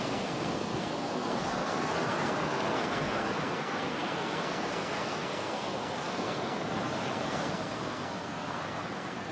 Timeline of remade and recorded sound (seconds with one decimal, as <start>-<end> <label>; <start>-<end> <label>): 0.0-9.3 remade